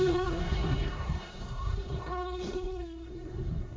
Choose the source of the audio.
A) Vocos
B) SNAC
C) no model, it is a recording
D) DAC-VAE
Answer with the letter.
B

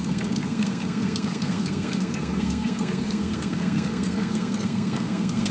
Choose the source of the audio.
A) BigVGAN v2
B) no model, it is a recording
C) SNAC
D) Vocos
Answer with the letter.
C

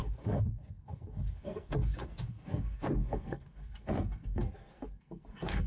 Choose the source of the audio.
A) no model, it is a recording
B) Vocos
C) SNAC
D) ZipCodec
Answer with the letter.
C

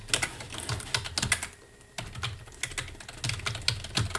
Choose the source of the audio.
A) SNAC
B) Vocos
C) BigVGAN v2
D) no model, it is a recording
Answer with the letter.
D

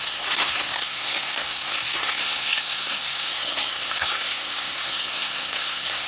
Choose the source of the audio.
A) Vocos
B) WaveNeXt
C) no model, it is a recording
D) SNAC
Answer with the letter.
D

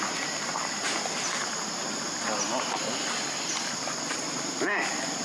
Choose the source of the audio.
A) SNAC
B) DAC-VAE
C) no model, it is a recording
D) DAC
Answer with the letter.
C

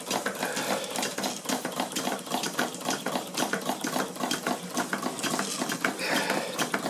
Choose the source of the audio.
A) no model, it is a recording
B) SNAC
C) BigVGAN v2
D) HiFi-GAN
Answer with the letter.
A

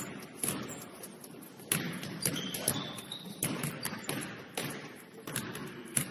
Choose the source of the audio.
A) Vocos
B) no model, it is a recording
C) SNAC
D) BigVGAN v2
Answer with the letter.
B